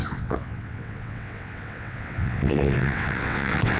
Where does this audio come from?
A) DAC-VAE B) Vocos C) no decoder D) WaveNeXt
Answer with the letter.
D